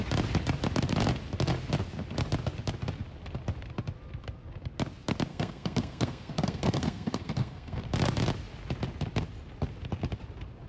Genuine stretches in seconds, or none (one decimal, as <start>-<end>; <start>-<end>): 0.0-5.3; 7.8-10.7